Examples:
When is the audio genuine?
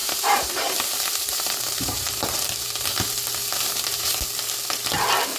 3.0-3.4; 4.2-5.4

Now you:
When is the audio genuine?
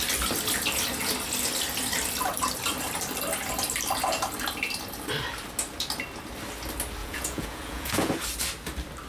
0.0-7.0; 8.1-9.1